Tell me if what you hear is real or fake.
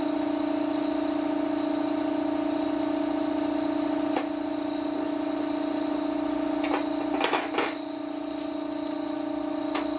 real